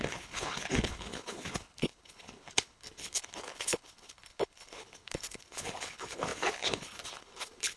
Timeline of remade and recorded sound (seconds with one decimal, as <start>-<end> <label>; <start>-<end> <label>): 0.0-7.8 remade